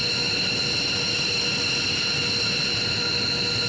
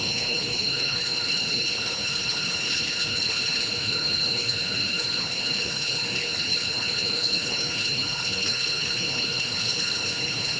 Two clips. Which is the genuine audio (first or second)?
first